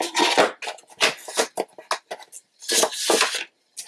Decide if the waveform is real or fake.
real